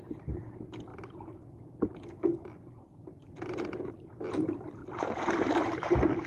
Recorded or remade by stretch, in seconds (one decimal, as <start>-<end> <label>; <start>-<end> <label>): 0.0-0.9 recorded; 0.9-2.7 remade; 2.7-3.2 recorded; 3.2-4.1 remade; 4.1-4.8 recorded; 4.8-6.3 remade